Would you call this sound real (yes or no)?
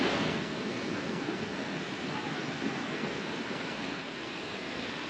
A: no